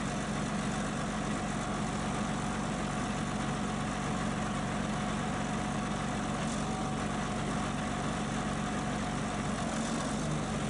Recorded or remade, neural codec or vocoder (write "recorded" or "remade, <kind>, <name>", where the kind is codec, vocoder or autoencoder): recorded